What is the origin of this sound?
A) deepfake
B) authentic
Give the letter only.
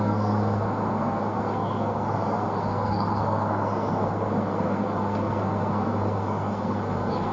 A